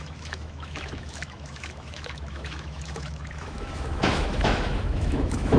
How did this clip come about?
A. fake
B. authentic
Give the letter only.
A